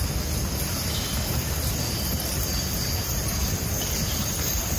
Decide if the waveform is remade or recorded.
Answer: recorded